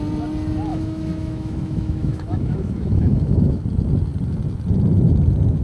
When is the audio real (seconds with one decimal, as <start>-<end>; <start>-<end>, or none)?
0.0-0.7; 3.6-5.6